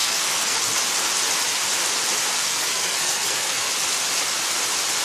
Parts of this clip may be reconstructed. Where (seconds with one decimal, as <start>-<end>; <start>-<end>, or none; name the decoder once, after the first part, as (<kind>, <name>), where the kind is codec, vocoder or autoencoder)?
0.0-0.6 (codec, SNAC); 2.3-3.7